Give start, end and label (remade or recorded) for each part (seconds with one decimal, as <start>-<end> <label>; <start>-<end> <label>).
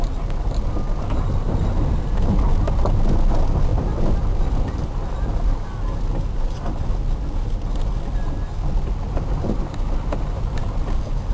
0.0-3.7 recorded; 3.7-5.4 remade; 5.4-11.3 recorded